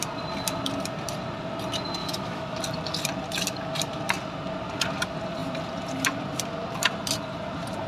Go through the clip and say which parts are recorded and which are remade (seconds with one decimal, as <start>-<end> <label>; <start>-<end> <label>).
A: 0.0-2.0 recorded; 2.0-2.6 remade; 2.6-7.9 recorded